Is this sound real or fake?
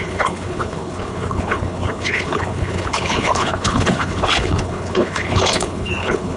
fake